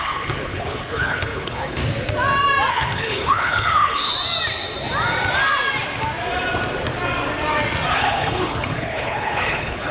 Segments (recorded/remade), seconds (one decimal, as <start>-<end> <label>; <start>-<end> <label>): 0.0-1.8 remade; 1.8-2.7 recorded; 2.7-4.1 remade; 4.1-7.9 recorded; 7.9-9.9 remade

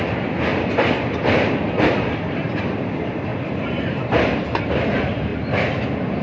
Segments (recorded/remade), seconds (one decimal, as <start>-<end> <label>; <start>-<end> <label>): 0.0-0.5 recorded; 0.5-2.9 remade; 2.9-3.3 recorded; 3.3-4.6 remade; 4.6-6.2 recorded

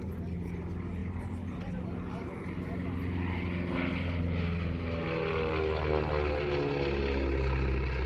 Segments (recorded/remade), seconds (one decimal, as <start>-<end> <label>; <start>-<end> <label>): 0.0-8.1 recorded

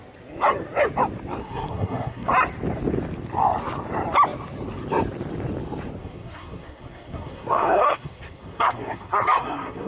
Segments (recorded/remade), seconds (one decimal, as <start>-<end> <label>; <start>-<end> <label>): 0.0-1.4 recorded; 1.4-2.3 remade; 2.3-6.0 recorded; 6.0-9.9 remade